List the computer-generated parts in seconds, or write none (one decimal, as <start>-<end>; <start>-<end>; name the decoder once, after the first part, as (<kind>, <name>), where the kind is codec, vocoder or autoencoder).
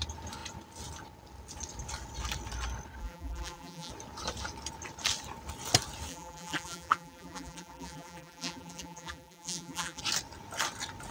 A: 3.0-3.9 (vocoder, BigVGAN v2); 6.1-10.0